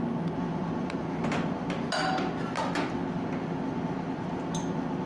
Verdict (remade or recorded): recorded